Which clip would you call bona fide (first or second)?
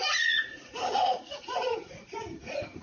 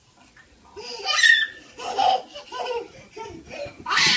second